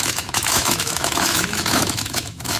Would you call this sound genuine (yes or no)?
no